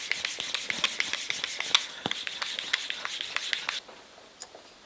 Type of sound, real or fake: real